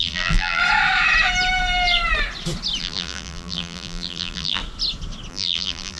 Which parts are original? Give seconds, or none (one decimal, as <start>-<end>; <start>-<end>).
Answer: 0.6-2.8; 4.6-5.3